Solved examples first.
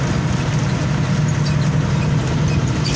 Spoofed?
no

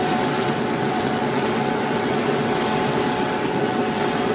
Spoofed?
yes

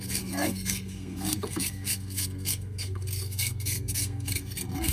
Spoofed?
yes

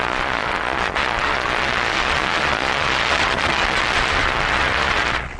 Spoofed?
yes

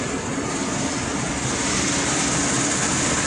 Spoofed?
no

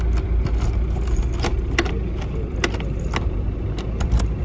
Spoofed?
no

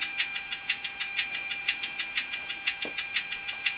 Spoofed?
yes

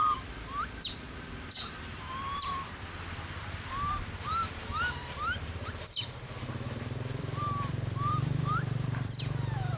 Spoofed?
yes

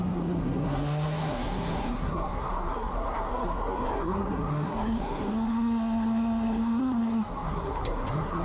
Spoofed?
yes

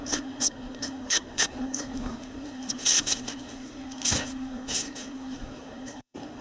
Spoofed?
yes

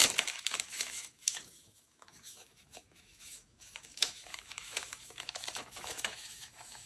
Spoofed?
yes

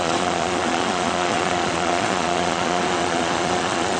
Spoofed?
yes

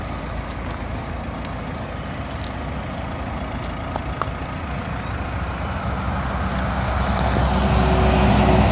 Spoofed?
no